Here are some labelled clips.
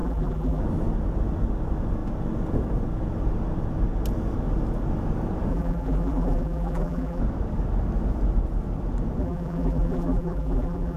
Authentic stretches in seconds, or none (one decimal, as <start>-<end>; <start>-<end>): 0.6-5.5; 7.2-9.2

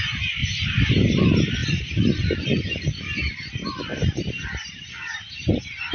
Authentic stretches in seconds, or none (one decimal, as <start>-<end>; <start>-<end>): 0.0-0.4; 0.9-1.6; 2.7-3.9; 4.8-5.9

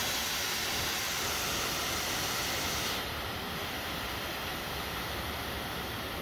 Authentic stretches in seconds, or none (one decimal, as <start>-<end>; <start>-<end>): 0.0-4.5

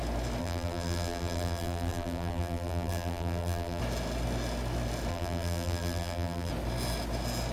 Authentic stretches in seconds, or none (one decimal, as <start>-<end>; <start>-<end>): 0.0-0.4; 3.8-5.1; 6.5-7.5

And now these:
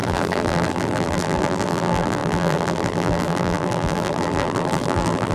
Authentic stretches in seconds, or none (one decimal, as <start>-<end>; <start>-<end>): none